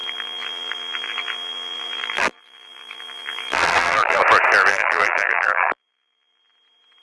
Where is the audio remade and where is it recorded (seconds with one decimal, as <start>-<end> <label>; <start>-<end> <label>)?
0.0-4.2 remade; 4.2-4.7 recorded; 4.7-6.4 remade; 6.4-7.0 recorded